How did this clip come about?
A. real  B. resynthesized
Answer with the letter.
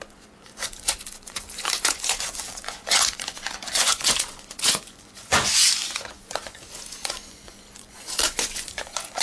B